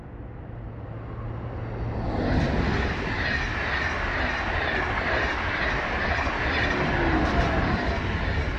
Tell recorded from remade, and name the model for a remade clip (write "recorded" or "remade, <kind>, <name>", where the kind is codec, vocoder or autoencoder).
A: recorded